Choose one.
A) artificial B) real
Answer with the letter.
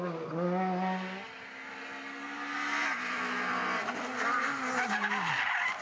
B